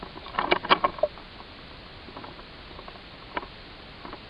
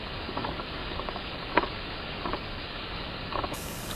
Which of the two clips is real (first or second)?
first